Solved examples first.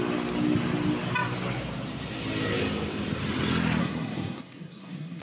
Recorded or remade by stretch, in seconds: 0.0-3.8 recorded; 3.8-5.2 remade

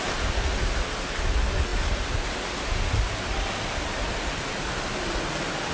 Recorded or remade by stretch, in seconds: 0.0-5.7 recorded

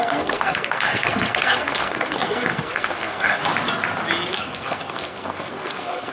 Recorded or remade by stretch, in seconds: 0.0-3.4 remade; 3.4-4.3 recorded; 4.3-6.1 remade

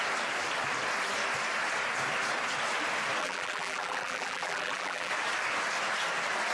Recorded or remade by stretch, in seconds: 0.0-3.2 recorded; 3.2-5.1 remade; 5.1-6.5 recorded

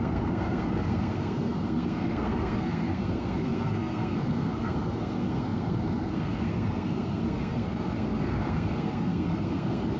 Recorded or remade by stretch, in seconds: 0.0-10.0 remade

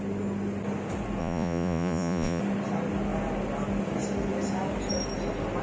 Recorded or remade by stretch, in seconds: 0.0-1.2 recorded; 1.2-2.4 remade; 2.4-5.6 recorded

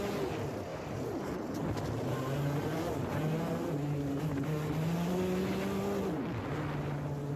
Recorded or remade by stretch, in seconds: 0.0-7.4 recorded